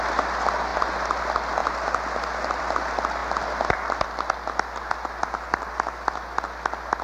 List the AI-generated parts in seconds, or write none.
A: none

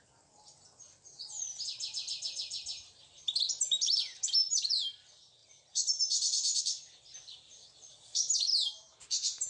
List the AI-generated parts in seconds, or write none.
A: 5.4-6.6; 8.5-9.5

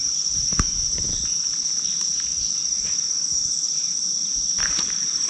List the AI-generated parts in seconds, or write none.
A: 0.0-0.5; 1.7-5.3

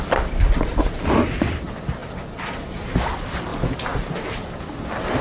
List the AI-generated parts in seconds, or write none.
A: 0.0-2.0; 3.1-3.5

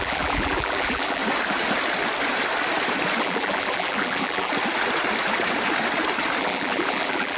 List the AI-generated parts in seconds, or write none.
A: 0.0-1.2; 3.2-4.5; 6.4-7.4

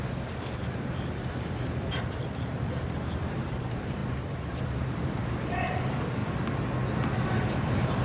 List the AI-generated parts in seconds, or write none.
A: 0.0-4.0; 4.7-6.2; 7.5-8.0

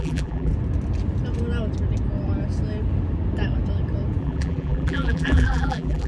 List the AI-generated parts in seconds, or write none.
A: 0.0-0.5; 4.2-6.1